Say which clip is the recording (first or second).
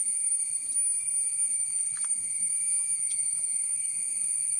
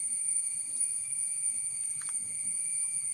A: first